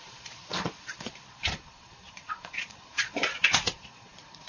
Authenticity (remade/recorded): remade